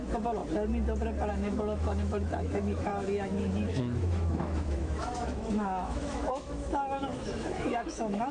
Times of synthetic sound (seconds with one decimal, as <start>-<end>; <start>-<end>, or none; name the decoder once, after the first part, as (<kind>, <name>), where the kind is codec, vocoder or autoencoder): 0.0-0.4 (autoencoder, DAC-VAE); 1.3-8.3